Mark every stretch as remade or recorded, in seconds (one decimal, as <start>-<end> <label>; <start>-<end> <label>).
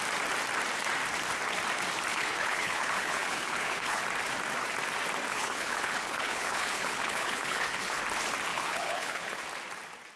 0.0-2.1 recorded; 2.1-4.0 remade; 4.0-5.3 recorded; 5.3-8.0 remade; 8.0-8.5 recorded; 8.5-9.4 remade; 9.4-10.2 recorded